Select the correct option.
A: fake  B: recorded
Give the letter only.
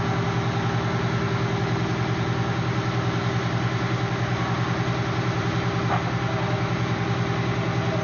B